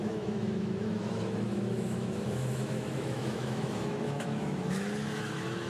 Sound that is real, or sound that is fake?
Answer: fake